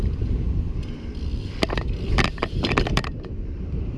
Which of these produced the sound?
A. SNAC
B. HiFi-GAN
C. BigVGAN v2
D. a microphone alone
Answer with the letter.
C